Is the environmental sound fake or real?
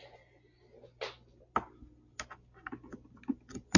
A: real